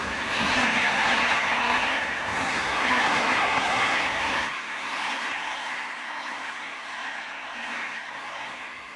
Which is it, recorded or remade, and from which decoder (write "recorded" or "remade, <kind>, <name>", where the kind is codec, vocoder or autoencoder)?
remade, codec, SNAC